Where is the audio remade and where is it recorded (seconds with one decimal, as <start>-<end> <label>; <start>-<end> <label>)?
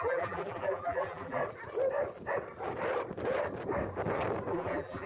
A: 0.0-1.4 remade; 1.4-4.5 recorded; 4.5-5.1 remade